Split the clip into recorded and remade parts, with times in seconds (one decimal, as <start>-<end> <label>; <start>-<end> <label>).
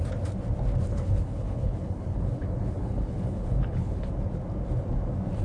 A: 0.0-0.9 recorded; 0.9-4.1 remade; 4.1-5.4 recorded